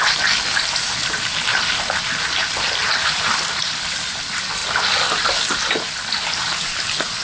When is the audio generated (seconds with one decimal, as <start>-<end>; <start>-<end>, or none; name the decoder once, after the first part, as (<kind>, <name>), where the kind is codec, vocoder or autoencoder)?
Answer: none